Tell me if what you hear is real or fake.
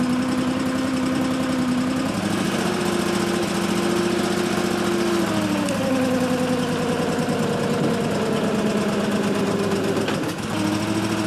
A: real